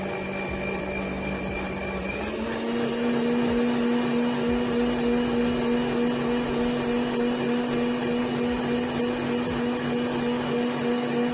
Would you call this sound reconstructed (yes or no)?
no